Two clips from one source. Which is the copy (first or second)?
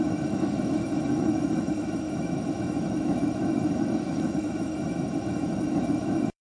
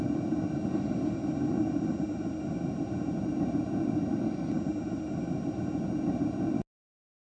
first